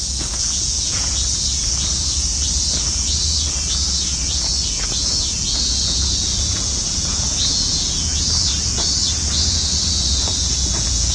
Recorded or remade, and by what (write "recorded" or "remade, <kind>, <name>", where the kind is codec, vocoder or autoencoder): remade, vocoder, Vocos